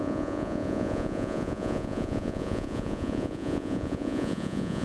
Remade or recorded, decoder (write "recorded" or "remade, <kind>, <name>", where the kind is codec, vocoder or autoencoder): remade, vocoder, Vocos